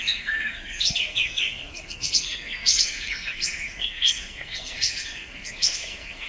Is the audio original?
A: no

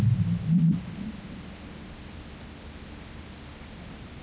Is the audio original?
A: yes